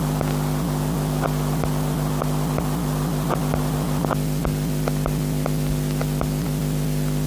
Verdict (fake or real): real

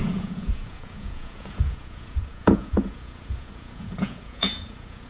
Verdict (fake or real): fake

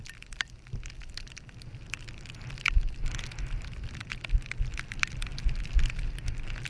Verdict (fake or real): real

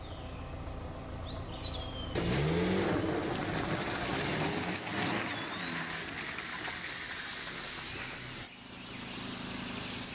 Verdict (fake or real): real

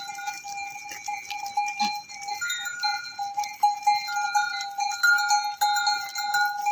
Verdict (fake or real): real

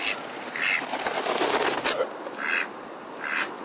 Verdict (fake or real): real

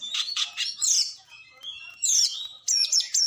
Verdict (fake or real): fake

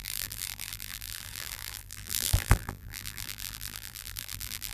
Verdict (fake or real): fake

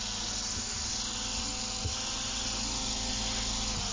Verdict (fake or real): real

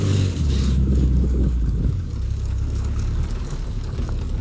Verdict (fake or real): fake